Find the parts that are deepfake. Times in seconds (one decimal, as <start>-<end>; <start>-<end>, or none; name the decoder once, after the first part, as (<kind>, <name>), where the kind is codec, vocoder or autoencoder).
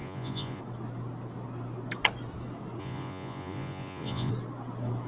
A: 0.0-0.6 (vocoder, Vocos); 2.8-4.3